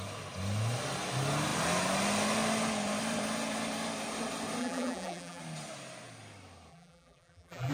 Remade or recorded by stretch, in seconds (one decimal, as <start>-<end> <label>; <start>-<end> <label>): 0.0-4.6 recorded; 4.6-5.4 remade; 5.4-6.7 recorded; 6.7-7.7 remade